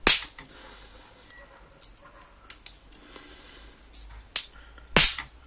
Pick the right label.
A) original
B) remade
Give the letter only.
A